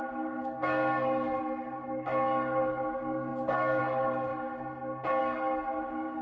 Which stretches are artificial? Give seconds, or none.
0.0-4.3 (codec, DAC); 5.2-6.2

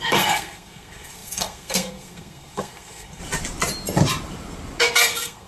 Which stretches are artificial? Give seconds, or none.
0.0-3.2 (codec, SNAC); 4.8-5.5